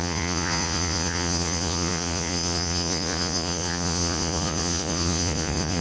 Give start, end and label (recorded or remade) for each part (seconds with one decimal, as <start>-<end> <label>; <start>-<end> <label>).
0.0-5.8 remade